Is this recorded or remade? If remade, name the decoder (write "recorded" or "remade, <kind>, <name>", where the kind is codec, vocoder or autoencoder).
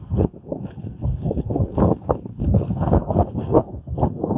remade, codec, SNAC